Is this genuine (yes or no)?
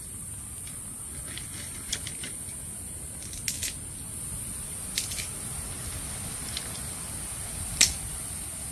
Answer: yes